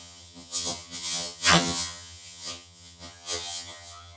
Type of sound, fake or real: fake